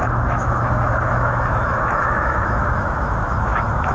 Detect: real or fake fake